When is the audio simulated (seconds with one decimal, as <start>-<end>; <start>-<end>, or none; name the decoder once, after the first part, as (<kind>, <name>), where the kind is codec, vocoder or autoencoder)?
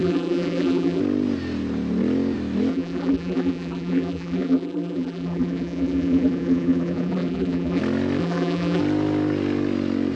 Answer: 0.0-1.0 (vocoder, BigVGAN v2); 2.7-7.8; 8.2-8.8